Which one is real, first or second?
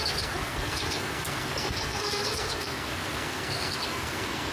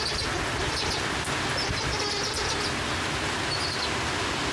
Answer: second